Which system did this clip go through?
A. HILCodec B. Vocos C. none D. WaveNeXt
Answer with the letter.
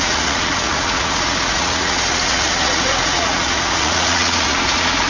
B